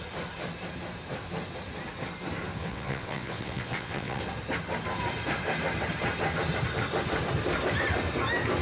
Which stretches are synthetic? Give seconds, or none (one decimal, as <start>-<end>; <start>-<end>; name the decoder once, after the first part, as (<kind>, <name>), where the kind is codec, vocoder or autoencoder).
2.6-4.2 (vocoder, WaveNeXt)